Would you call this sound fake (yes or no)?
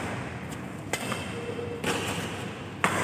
no